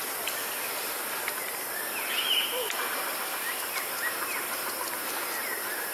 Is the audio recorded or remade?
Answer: remade